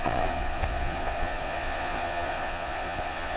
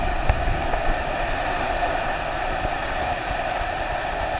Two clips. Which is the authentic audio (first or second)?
second